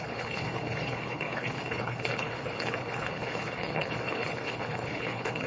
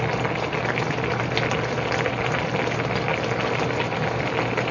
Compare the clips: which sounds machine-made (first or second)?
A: first